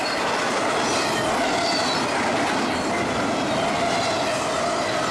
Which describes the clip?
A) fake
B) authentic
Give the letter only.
B